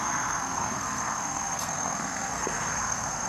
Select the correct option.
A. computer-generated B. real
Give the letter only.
A